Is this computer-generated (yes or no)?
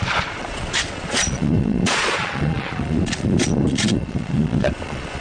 yes